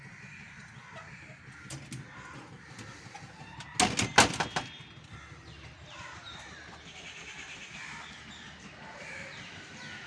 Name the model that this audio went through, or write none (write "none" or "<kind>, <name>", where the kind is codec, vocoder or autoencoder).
none